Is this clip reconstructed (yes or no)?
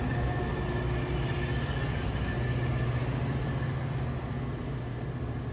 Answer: no